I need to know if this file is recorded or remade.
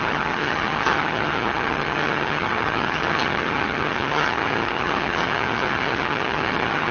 remade